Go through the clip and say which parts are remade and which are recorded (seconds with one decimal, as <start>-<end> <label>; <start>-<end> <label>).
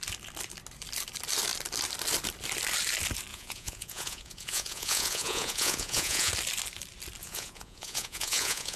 0.0-3.3 recorded; 3.3-6.3 remade; 6.3-7.2 recorded; 7.2-8.8 remade